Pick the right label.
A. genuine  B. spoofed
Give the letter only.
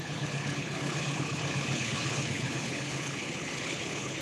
B